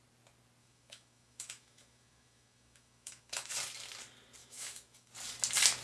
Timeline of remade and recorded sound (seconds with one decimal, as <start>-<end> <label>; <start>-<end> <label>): 0.0-0.6 recorded; 0.6-3.5 remade; 3.5-4.4 recorded; 4.4-5.1 remade; 5.1-5.8 recorded